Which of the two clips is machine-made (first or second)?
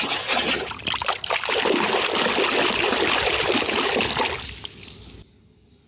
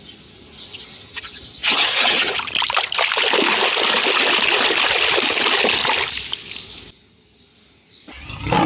second